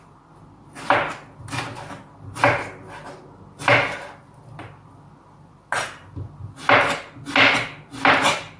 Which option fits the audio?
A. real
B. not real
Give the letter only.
A